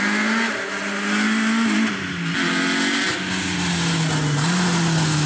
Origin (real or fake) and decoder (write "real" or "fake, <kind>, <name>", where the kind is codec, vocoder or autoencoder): real